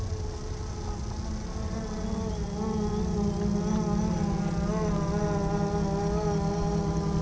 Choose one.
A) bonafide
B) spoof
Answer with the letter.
A